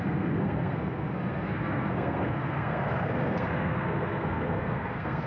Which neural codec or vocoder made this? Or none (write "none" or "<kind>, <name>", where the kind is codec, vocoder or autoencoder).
codec, SNAC